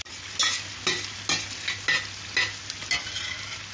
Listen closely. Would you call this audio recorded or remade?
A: recorded